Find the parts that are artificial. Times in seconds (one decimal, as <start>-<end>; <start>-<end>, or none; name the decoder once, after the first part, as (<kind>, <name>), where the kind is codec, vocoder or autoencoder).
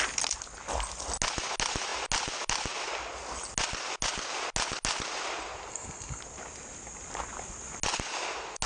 5.7-6.2 (codec, SNAC)